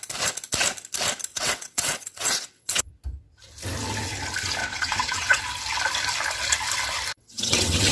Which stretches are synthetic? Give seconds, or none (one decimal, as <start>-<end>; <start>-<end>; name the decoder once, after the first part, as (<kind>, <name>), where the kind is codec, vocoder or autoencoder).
1.3-2.9 (vocoder, WaveNeXt); 4.6-5.4; 7.1-7.9